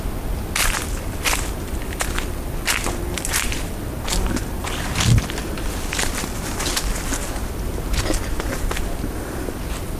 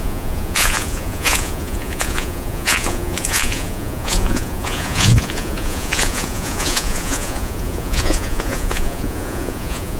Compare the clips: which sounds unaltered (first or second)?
first